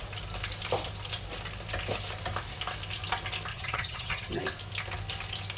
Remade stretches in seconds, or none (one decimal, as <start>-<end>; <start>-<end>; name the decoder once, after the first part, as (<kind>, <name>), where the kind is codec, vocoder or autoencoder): 3.5-4.4 (vocoder, HiFi-GAN)